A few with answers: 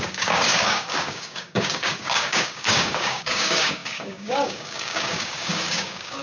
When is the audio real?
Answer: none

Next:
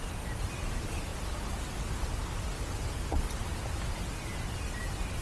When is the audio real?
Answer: 0.0-5.2

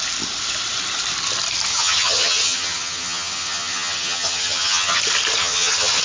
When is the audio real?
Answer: 0.0-1.7; 5.0-5.4

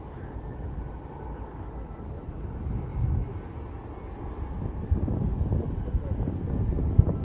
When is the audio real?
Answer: 0.0-7.2